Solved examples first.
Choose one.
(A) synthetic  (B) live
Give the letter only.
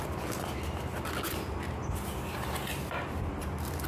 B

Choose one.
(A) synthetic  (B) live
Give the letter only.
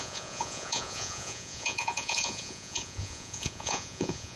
A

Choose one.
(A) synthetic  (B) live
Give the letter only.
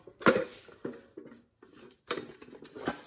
B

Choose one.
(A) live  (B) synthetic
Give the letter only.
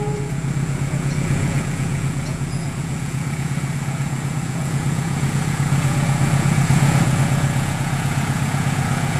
B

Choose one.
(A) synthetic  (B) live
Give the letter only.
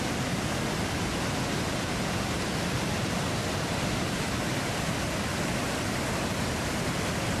B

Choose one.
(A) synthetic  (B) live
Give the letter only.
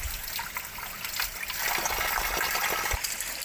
B